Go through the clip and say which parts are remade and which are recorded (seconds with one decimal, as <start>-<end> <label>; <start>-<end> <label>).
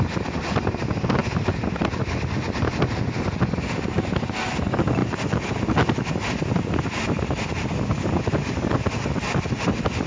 0.0-10.1 recorded